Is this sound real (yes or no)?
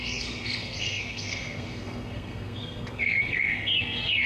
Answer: no